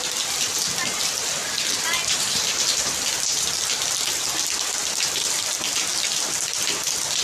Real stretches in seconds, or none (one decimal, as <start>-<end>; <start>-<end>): 0.0-7.2

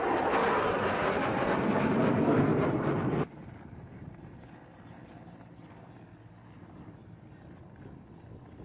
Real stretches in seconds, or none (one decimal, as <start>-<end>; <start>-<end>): 0.0-0.4; 2.1-2.5; 4.1-8.6

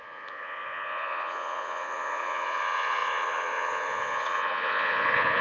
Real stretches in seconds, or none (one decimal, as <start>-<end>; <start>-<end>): none

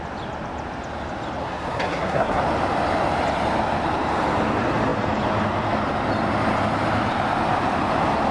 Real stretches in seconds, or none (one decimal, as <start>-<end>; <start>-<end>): 0.0-1.4; 2.4-8.3